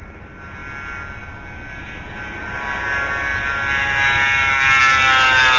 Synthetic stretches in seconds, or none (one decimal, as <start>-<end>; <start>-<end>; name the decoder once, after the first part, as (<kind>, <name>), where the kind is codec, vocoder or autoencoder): none